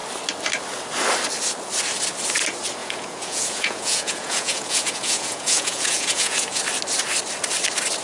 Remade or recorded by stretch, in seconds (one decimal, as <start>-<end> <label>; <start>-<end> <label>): 0.0-2.8 recorded; 2.8-6.6 remade; 6.6-8.0 recorded